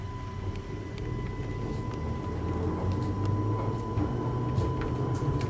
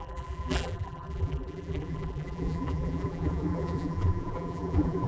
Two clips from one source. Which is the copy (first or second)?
second